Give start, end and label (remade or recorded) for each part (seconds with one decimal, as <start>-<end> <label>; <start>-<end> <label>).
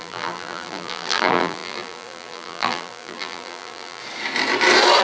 0.0-4.0 remade; 4.0-5.0 recorded